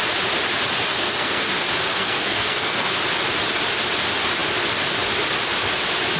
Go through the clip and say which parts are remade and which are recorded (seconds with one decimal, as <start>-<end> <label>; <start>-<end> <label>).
0.0-0.9 recorded; 0.9-1.5 remade; 1.5-1.9 recorded; 1.9-3.0 remade; 3.0-6.2 recorded